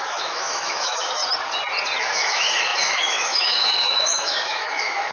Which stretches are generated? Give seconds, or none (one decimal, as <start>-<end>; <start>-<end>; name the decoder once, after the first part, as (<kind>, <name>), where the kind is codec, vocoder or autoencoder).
0.0-1.2 (autoencoder, DAC-VAE); 2.0-5.1

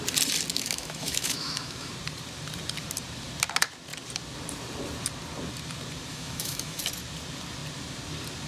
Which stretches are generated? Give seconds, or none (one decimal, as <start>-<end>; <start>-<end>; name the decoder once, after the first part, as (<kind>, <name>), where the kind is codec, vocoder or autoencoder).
0.5-1.9 (autoencoder, DAC-VAE); 6.1-6.8